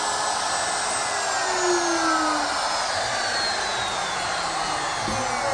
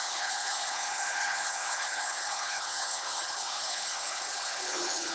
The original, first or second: first